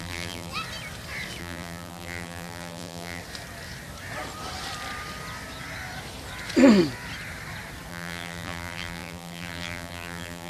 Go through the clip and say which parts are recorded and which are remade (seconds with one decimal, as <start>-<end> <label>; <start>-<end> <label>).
0.0-0.5 remade; 0.5-1.4 recorded; 1.4-3.2 remade; 3.2-7.9 recorded; 7.9-10.5 remade